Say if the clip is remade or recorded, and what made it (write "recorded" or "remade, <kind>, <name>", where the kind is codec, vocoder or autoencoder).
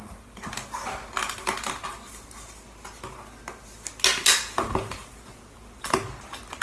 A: recorded